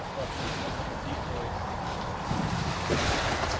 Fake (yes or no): yes